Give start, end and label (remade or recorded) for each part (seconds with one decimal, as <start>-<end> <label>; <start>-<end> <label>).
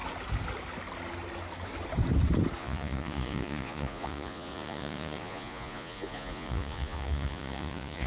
0.0-2.6 recorded; 2.6-8.1 remade